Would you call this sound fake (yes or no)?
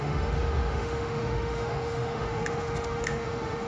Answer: yes